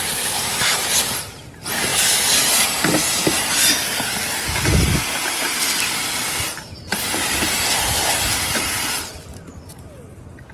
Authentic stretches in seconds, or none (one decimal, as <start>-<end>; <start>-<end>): 0.0-10.5